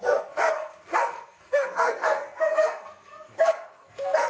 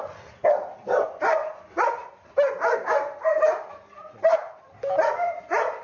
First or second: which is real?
second